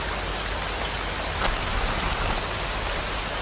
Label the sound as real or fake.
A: real